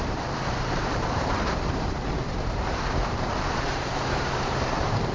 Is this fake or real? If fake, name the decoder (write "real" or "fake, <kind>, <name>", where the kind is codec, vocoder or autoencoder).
fake, vocoder, BigVGAN v2